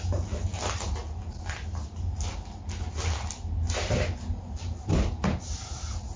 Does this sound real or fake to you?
real